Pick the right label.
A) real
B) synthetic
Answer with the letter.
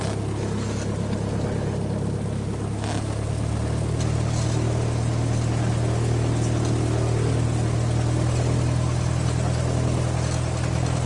A